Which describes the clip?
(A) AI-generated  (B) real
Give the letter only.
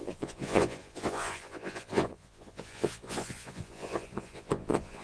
A